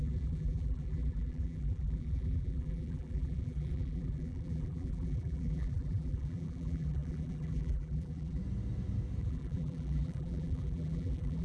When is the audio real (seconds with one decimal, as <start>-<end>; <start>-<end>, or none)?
8.4-9.2